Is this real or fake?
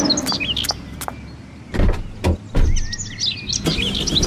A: real